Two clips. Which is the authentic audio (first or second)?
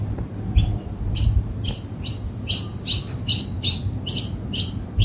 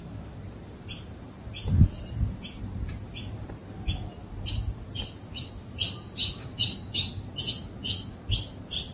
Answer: first